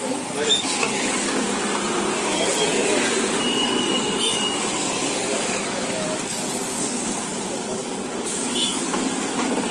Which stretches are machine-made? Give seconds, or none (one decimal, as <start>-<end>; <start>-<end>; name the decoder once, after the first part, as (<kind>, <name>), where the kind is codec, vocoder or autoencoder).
0.0-1.6 (codec, DAC); 2.1-9.7